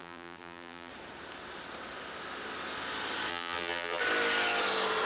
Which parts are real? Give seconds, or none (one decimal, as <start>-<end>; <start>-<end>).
0.9-3.3; 4.0-5.1